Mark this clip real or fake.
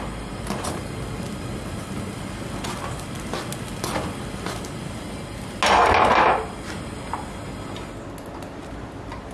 real